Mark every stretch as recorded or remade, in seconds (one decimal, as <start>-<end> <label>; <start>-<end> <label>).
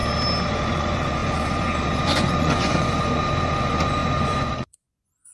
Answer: 0.0-0.5 recorded; 0.5-5.3 remade